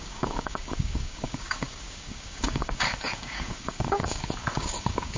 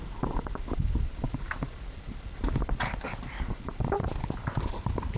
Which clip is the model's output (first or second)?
first